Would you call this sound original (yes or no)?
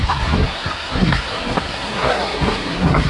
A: no